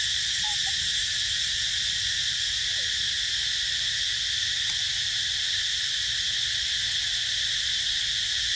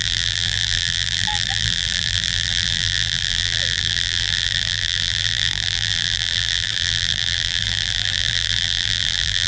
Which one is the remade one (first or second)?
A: second